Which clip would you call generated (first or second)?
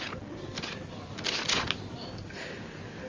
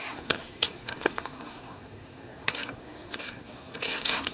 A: second